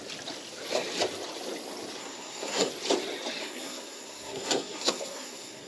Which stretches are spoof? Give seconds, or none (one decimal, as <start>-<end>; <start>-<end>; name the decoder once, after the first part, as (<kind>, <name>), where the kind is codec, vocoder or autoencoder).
2.0-2.7 (codec, SNAC); 3.4-5.7